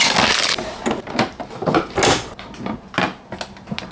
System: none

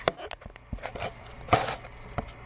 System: none